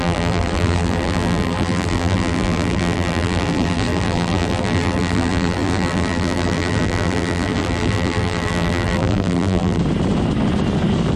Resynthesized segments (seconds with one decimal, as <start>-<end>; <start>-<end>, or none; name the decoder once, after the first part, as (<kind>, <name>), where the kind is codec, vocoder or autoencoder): 0.0-9.8 (vocoder, BigVGAN v2)